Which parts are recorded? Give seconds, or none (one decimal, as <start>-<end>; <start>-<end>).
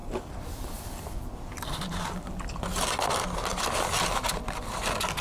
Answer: 2.4-5.2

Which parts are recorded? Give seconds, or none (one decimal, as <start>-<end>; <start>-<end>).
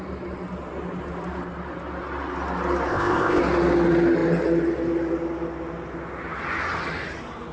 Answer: 0.0-2.9; 3.4-7.5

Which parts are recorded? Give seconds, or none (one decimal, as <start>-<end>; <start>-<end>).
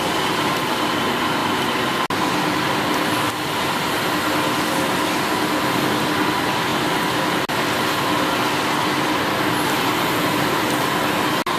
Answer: 0.0-11.6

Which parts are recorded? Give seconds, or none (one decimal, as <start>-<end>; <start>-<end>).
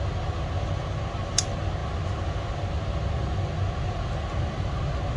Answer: 0.0-5.2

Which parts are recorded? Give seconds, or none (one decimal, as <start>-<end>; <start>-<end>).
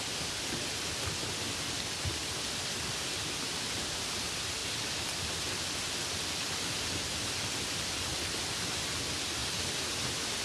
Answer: 0.0-10.4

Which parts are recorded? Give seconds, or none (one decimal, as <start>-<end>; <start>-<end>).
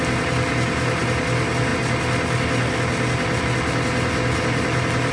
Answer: 0.0-5.1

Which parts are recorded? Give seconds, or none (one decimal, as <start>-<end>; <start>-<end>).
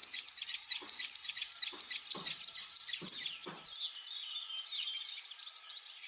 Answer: 1.4-4.4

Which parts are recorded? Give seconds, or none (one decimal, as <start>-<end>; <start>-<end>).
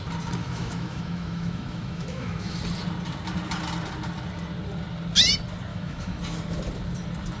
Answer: 0.0-0.4; 2.6-5.7; 6.2-7.4